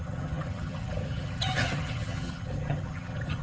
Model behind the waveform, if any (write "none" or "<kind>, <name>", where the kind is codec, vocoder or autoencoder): vocoder, HiFi-GAN